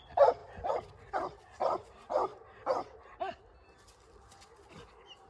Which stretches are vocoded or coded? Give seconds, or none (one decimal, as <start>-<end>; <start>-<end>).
none